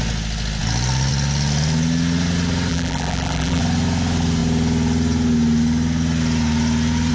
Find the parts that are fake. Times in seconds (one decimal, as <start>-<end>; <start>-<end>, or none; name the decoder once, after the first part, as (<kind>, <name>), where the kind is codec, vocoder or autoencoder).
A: 2.7-3.6 (vocoder, BigVGAN v2)